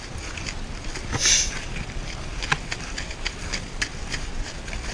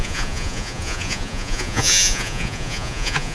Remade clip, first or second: second